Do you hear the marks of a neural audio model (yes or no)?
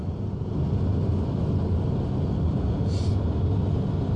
no